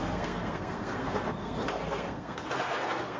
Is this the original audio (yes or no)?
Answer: no